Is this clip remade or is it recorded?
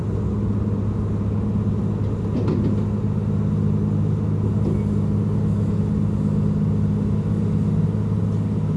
recorded